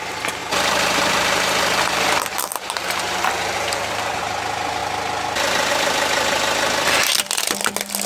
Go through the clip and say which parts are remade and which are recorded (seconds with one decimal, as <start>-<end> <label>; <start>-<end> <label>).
0.0-0.4 recorded; 0.4-4.2 remade; 4.2-8.1 recorded